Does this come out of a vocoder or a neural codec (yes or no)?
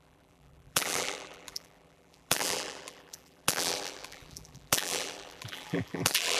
yes